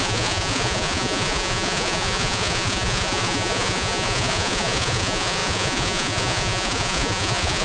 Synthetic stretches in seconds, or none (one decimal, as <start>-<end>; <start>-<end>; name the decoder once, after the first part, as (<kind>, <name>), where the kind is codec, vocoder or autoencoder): 0.0-7.6 (vocoder, Vocos)